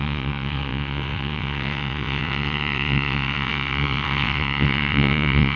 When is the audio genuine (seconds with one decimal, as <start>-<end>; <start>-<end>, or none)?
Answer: none